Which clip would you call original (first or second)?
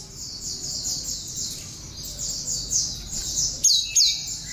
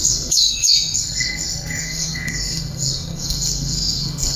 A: first